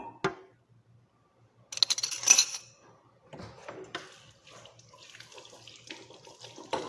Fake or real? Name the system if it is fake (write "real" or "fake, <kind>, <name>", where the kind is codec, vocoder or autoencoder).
real